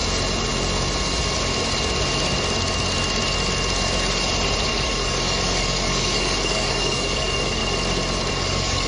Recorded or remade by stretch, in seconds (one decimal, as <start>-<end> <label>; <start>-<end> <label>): 0.0-4.7 recorded; 4.7-7.6 remade; 7.6-8.3 recorded; 8.3-8.9 remade